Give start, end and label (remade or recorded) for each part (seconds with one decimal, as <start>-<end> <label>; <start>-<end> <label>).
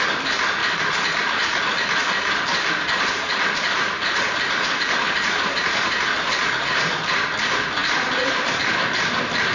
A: 0.0-0.6 recorded; 0.6-1.6 remade; 1.6-2.5 recorded; 2.5-7.2 remade; 7.2-9.5 recorded